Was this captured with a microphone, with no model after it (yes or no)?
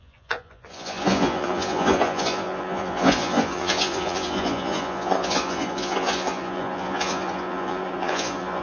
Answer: no